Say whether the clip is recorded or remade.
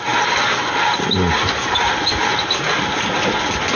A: recorded